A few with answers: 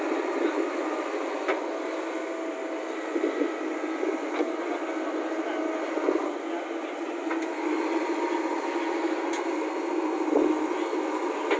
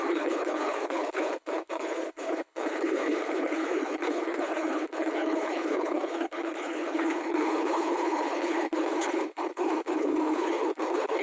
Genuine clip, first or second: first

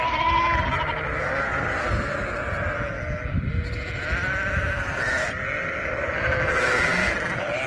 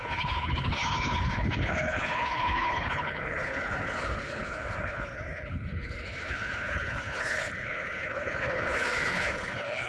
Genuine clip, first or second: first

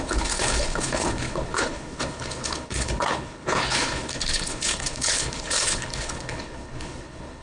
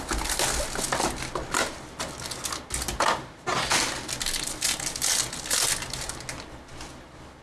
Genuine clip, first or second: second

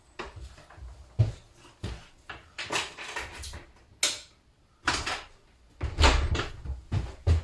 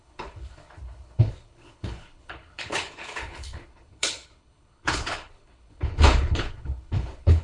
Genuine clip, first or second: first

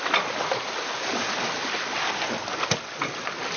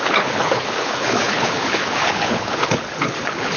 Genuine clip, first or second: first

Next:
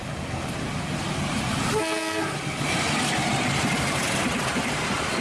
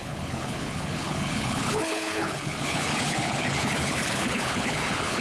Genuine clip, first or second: first